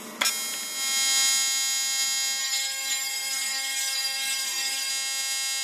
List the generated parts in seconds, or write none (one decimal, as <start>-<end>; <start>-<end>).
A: 2.4-4.9